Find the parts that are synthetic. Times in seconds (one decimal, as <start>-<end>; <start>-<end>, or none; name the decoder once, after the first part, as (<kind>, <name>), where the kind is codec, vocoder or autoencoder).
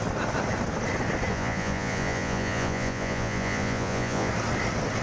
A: 1.3-4.3 (vocoder, Vocos)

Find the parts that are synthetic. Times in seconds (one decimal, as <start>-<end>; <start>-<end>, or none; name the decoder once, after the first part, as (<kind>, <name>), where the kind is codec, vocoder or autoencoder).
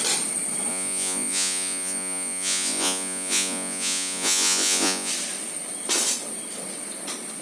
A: 0.7-5.1 (vocoder, Vocos)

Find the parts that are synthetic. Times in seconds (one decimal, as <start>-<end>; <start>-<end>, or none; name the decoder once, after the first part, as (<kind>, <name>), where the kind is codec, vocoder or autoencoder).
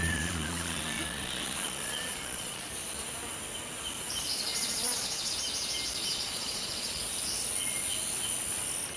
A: 0.0-2.7 (vocoder, Vocos); 4.5-5.3; 6.0-7.0